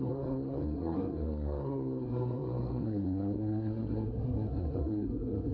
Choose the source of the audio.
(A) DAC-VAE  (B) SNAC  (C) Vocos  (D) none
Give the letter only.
B